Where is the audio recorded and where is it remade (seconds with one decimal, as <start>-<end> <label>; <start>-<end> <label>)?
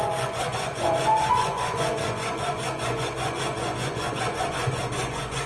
0.0-5.5 remade